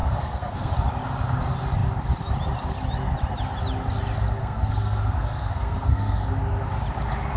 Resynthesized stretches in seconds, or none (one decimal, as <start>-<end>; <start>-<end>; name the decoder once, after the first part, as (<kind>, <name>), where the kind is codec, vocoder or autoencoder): 0.0-0.7 (codec, SNAC); 4.4-6.3